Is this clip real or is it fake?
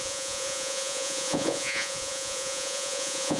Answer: fake